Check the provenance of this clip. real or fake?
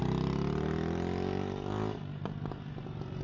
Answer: real